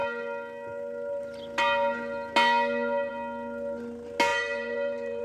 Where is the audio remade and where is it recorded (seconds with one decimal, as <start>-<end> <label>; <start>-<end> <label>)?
0.0-4.3 recorded; 4.3-5.2 remade